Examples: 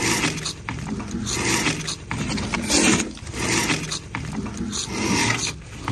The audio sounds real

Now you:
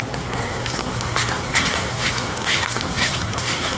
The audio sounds fake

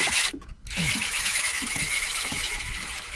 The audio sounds fake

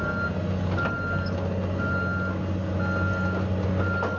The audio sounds real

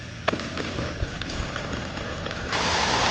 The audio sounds real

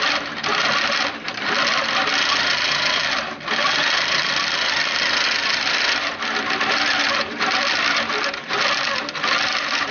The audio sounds fake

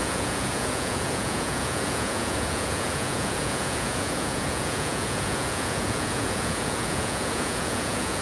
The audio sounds fake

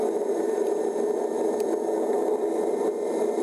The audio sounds real